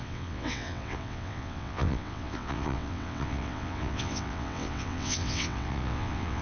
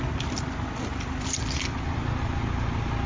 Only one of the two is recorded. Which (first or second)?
second